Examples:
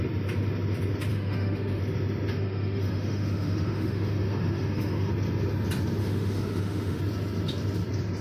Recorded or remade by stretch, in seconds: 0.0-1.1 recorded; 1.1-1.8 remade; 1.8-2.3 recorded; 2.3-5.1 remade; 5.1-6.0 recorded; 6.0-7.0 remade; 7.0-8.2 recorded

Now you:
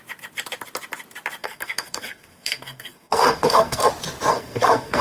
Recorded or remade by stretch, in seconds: 0.0-1.4 recorded; 1.4-3.9 remade; 3.9-4.3 recorded; 4.3-5.0 remade

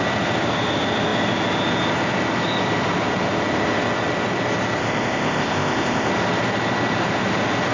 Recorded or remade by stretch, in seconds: 0.0-4.8 recorded; 4.8-6.1 remade; 6.1-7.7 recorded

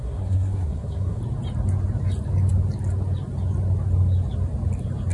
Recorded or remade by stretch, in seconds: 0.0-1.2 remade; 1.2-5.1 recorded

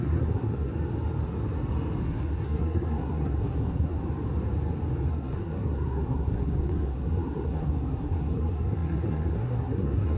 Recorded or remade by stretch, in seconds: 0.0-0.7 remade; 0.7-2.0 recorded; 2.0-4.0 remade; 4.0-5.1 recorded; 5.1-10.2 remade

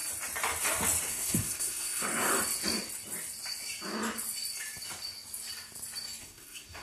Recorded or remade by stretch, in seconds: 0.0-1.1 recorded; 1.1-2.3 remade; 2.3-6.2 recorded; 6.2-6.8 remade